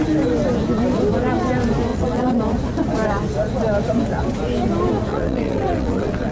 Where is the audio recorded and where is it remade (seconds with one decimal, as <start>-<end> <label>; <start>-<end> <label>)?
0.0-1.9 recorded; 1.9-2.4 remade; 2.4-5.1 recorded; 5.1-6.3 remade